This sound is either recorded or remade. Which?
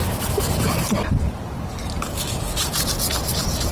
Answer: recorded